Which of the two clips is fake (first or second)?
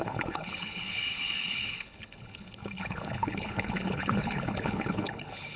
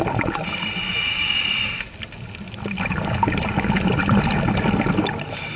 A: first